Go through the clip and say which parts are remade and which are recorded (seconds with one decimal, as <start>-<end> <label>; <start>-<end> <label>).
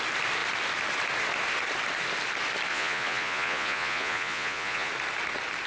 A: 0.0-2.7 recorded; 2.7-4.9 remade; 4.9-5.7 recorded